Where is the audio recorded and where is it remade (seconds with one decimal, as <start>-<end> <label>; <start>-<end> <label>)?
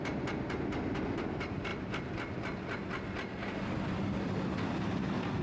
0.0-5.4 recorded